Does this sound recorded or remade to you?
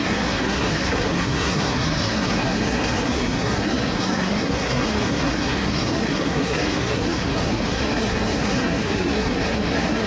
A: remade